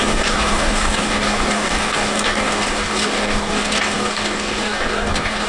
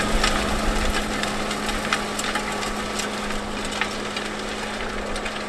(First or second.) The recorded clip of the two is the second